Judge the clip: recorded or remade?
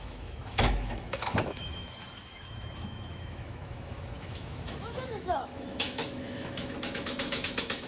remade